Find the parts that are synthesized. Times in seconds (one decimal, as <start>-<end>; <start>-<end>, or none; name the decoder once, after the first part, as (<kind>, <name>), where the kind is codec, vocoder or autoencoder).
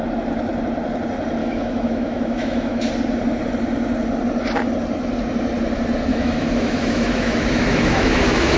1.4-2.9 (autoencoder, DAC-VAE); 6.1-8.6